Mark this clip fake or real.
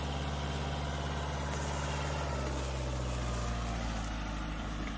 real